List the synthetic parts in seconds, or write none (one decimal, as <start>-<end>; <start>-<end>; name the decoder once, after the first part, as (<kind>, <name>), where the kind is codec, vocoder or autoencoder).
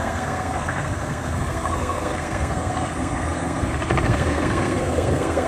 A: 0.0-5.5 (codec, SNAC)